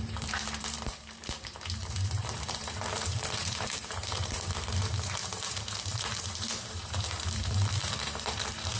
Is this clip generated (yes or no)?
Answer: yes